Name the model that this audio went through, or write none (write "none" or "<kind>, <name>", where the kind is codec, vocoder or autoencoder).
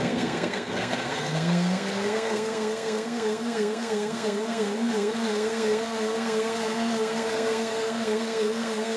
codec, SNAC